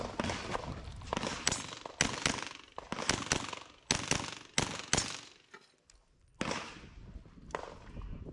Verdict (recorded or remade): recorded